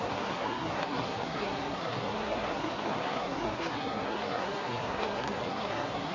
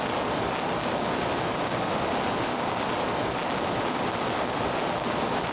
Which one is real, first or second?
second